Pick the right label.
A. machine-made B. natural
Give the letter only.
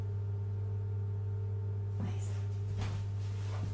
B